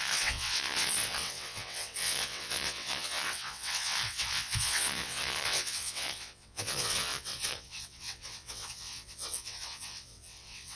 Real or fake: fake